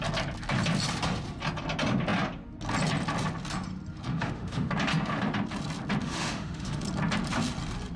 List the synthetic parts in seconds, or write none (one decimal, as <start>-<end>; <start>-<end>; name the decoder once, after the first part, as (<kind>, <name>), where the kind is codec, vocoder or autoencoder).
4.1-4.7 (autoencoder, DAC-VAE); 6.0-6.8